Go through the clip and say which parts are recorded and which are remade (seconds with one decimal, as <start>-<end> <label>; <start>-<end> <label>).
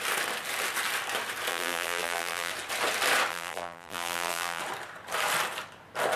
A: 0.0-1.5 recorded; 1.5-2.5 remade; 2.5-3.3 recorded; 3.3-4.6 remade; 4.6-6.2 recorded